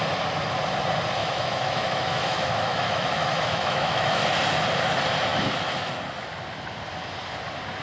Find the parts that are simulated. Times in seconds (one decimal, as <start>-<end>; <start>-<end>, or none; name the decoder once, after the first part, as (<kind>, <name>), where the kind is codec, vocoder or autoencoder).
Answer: 1.2-4.2 (autoencoder, DAC-VAE); 5.3-5.9